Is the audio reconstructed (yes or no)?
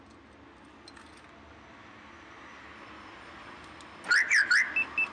no